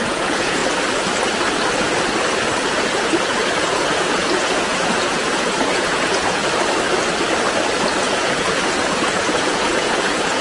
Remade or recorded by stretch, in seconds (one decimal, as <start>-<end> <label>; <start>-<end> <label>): 0.0-0.6 remade; 0.6-2.7 recorded; 2.7-6.4 remade; 6.4-8.0 recorded; 8.0-10.4 remade